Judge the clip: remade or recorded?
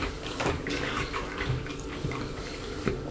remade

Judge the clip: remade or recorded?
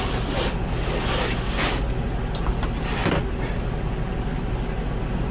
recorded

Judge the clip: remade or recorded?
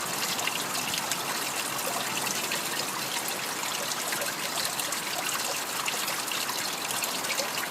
recorded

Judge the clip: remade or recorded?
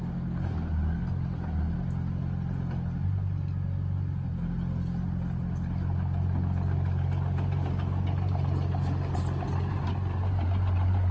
recorded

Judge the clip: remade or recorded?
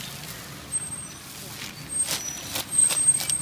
recorded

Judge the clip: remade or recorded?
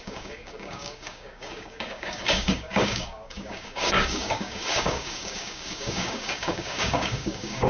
remade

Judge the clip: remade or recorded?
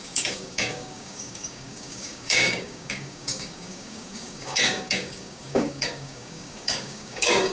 remade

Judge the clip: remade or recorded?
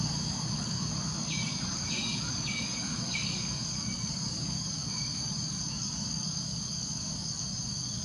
remade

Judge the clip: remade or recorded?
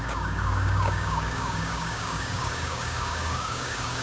remade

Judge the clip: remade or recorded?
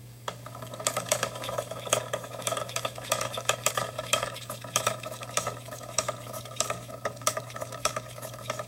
remade